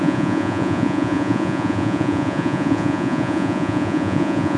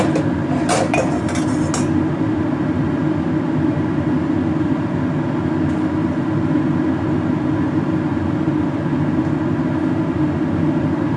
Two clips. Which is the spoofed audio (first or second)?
first